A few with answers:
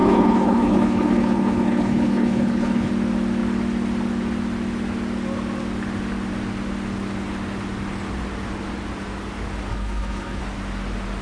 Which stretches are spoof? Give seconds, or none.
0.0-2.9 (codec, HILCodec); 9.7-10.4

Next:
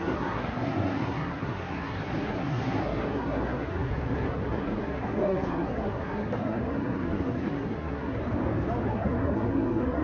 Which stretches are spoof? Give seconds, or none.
0.0-8.2 (codec, SNAC); 8.9-10.0

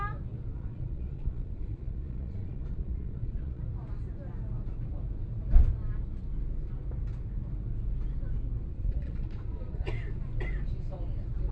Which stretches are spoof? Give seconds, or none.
0.5-3.6 (vocoder, Vocos); 8.7-9.9

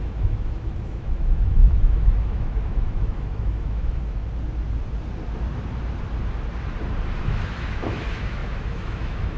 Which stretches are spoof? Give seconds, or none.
0.0-4.2 (autoencoder, DAC-VAE); 7.2-9.4

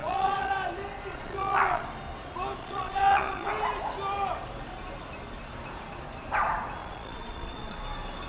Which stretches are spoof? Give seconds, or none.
0.0-0.5 (vocoder, Vocos); 1.1-1.8; 2.6-3.5; 6.8-7.8